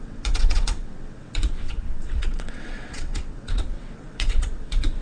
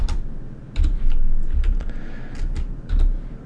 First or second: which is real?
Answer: second